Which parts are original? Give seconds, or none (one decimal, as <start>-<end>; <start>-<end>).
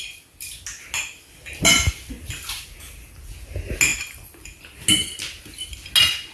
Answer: 0.0-6.3